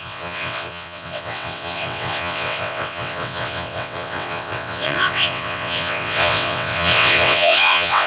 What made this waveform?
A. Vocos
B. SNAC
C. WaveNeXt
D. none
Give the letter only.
C